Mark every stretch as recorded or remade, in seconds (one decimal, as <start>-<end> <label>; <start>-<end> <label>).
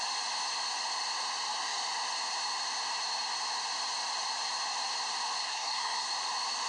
0.0-5.4 recorded; 5.4-6.1 remade; 6.1-6.7 recorded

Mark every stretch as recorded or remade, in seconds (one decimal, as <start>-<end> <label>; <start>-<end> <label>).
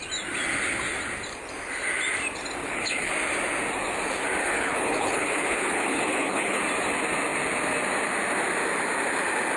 0.0-2.6 recorded; 2.6-3.1 remade; 3.1-4.4 recorded; 4.4-6.6 remade; 6.6-9.6 recorded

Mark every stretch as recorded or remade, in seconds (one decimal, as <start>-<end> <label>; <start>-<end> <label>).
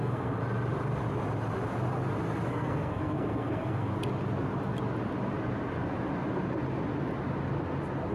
0.0-0.4 remade; 0.4-2.5 recorded; 2.5-3.9 remade; 3.9-8.1 recorded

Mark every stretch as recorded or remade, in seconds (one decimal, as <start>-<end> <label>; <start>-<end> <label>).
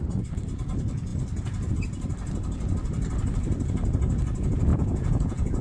0.0-4.7 recorded; 4.7-5.6 remade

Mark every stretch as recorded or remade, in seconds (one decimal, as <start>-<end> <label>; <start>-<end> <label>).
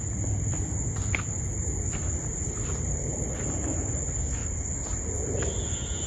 0.0-1.6 recorded; 1.6-3.9 remade; 3.9-4.4 recorded; 4.4-5.0 remade; 5.0-6.1 recorded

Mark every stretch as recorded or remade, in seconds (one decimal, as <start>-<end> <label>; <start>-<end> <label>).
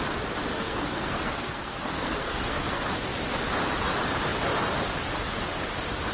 0.0-0.5 recorded; 0.5-2.8 remade; 2.8-6.1 recorded